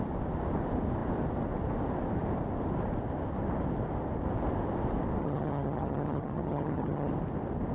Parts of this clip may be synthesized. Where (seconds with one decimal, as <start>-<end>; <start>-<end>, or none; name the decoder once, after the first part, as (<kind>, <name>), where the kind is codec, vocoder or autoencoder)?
5.2-7.1 (vocoder, HiFi-GAN)